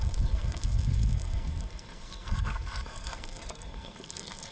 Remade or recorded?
remade